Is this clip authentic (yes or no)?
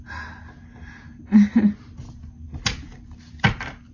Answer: yes